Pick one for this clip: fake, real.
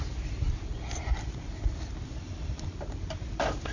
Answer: real